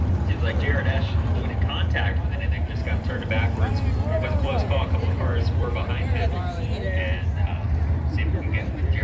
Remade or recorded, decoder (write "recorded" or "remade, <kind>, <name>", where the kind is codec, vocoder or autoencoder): remade, vocoder, BigVGAN v2